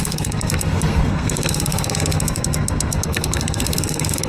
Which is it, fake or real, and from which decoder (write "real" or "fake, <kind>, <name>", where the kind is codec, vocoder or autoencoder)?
fake, codec, SNAC